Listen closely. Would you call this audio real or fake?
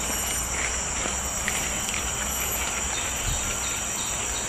real